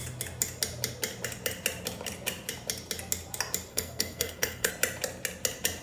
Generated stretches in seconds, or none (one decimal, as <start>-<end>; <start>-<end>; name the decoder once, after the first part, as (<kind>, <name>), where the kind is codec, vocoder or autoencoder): 3.7-4.7 (codec, SNAC)